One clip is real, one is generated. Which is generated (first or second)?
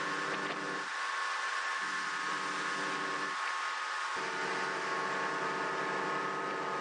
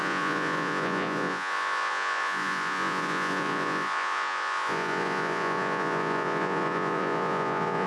second